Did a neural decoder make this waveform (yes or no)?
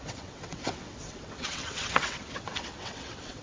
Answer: yes